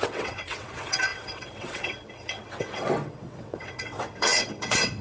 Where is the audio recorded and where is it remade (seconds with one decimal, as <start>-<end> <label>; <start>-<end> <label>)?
0.0-5.0 remade